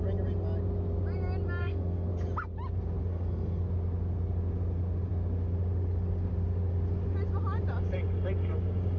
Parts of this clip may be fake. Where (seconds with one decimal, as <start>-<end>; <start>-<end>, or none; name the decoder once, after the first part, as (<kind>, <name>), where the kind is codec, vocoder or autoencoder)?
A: 1.6-2.1 (codec, SNAC); 3.1-3.6